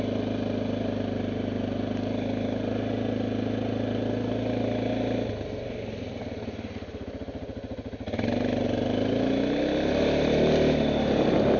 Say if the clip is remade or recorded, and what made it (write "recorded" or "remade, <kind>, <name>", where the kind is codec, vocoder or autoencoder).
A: recorded